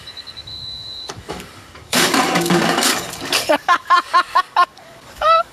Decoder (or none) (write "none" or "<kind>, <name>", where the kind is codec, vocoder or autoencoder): codec, DAC